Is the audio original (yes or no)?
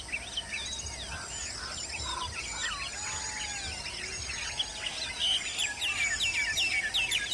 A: yes